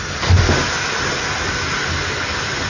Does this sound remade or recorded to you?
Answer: recorded